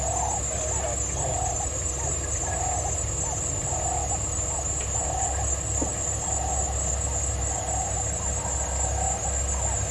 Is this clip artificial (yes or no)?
no